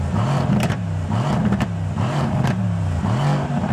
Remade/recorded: remade